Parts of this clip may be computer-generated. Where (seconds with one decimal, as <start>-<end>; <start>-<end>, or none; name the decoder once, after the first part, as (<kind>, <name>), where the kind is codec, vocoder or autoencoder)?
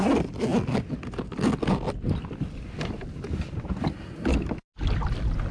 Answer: none